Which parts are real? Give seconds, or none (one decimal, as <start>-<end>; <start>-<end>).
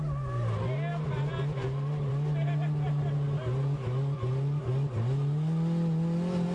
0.0-6.5